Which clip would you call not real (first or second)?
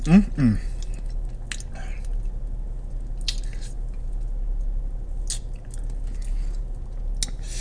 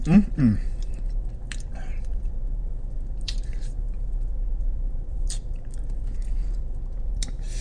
second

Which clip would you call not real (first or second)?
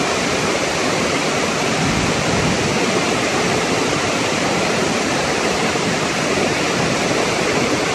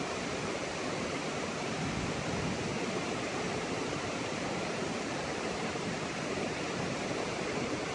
second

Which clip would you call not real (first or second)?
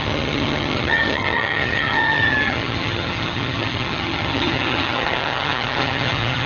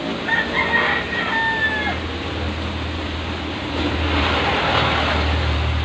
first